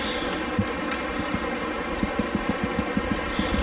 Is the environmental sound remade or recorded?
recorded